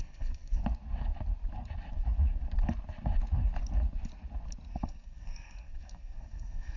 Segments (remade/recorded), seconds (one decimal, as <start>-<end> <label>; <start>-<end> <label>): 0.0-0.6 remade; 0.6-4.7 recorded; 4.7-6.8 remade